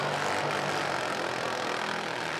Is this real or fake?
real